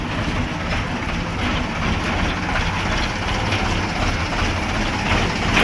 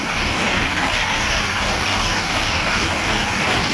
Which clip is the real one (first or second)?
first